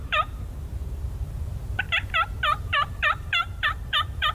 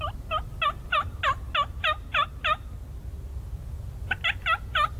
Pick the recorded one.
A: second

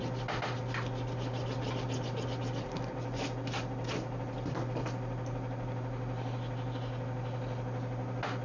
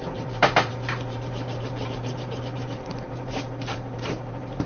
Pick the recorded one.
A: first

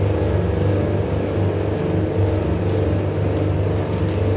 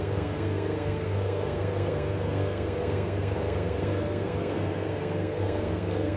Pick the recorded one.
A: first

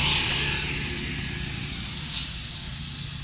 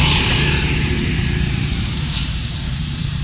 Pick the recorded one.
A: first